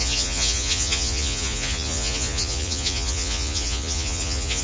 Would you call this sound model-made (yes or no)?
yes